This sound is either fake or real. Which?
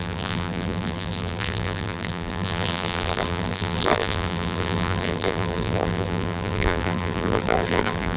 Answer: fake